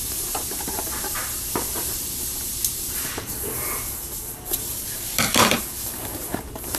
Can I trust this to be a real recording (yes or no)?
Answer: no